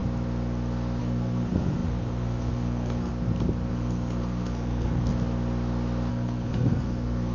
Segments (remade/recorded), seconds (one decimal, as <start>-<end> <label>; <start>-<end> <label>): 0.0-1.0 recorded; 1.0-3.1 remade; 3.1-3.7 recorded; 3.7-5.1 remade; 5.1-6.1 recorded; 6.1-7.3 remade